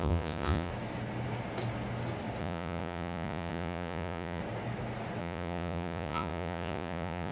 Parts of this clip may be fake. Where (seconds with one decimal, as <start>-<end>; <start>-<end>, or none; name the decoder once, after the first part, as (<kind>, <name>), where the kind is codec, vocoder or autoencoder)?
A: 0.0-0.7 (vocoder, Vocos); 2.4-4.4; 5.2-7.3